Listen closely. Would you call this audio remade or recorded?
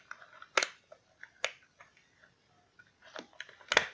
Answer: recorded